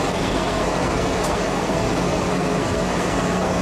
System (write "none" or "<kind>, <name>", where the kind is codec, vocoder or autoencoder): codec, SNAC